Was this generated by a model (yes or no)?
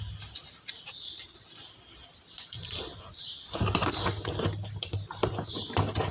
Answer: no